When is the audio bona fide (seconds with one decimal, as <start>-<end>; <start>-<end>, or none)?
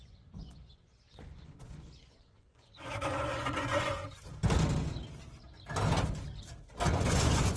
4.0-6.8